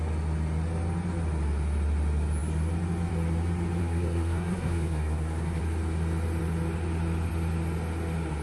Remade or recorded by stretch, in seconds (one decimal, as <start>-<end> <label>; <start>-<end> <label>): 0.0-3.8 recorded; 3.8-5.6 remade; 5.6-8.4 recorded